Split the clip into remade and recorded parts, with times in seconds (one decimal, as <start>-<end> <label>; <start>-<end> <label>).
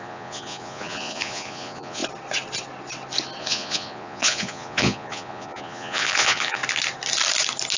0.0-2.0 remade; 2.0-3.4 recorded; 3.4-6.6 remade; 6.6-7.8 recorded